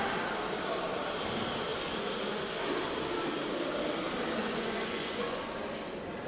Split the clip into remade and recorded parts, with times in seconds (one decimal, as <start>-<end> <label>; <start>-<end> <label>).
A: 0.0-4.4 recorded; 4.4-5.4 remade; 5.4-6.3 recorded